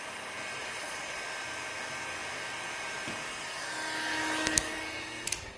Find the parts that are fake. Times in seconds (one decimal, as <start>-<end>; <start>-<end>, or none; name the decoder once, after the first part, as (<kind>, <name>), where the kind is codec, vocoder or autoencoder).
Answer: 0.6-1.2 (vocoder, Vocos)